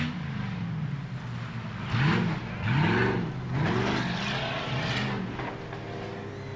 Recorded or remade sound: recorded